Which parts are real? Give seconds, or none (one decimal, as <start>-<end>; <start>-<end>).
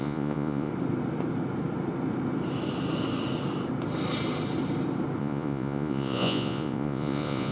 0.7-5.2